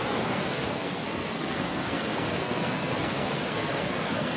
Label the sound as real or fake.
fake